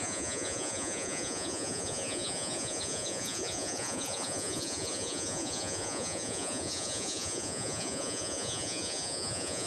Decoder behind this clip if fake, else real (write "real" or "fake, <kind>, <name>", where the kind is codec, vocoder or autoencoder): fake, vocoder, Vocos